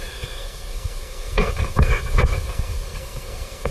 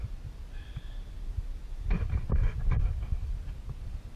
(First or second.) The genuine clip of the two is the second